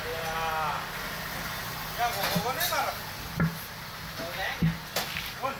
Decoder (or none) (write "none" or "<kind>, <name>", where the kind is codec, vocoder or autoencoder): none